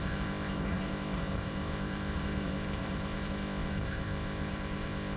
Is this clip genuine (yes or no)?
no